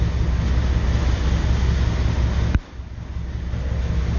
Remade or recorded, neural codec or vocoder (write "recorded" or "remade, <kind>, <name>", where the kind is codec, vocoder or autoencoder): recorded